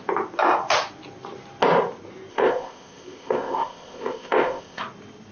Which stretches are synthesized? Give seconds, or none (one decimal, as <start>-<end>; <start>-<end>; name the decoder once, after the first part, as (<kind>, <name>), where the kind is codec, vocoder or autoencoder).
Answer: 2.3-4.8 (codec, ZipCodec)